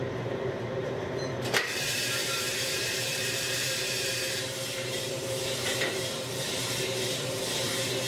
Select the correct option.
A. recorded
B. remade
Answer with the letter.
B